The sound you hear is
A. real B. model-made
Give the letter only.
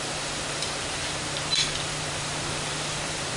B